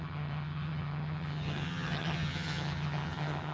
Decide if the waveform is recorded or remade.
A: remade